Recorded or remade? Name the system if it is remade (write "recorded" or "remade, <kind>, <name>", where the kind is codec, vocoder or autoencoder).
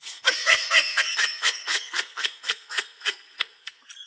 remade, codec, SNAC